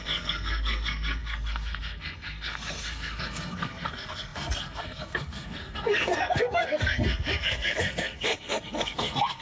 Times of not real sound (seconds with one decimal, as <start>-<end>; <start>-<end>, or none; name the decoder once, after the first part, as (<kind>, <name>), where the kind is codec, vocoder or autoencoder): 0.0-9.4 (codec, SNAC)